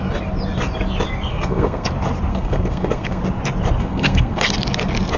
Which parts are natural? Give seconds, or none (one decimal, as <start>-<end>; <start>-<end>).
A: 0.0-1.3; 1.9-2.3; 3.2-3.8; 4.4-5.2